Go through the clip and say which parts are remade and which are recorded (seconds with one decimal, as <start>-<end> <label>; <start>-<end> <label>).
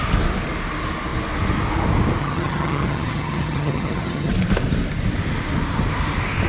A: 0.0-2.2 recorded; 2.2-4.3 remade; 4.3-6.5 recorded